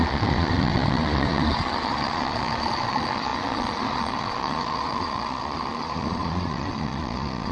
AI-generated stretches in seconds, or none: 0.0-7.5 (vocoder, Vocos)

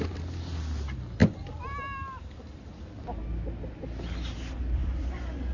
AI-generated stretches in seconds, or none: none